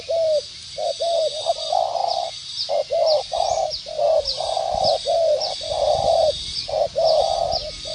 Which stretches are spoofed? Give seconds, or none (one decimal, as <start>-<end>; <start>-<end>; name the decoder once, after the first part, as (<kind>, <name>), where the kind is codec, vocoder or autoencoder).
none